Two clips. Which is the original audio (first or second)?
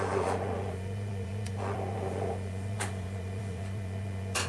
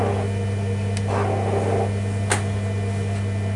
second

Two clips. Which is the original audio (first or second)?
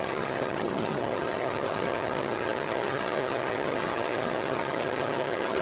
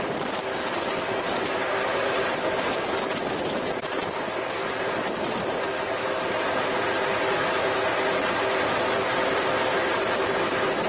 second